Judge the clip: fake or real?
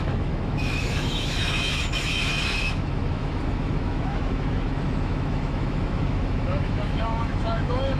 fake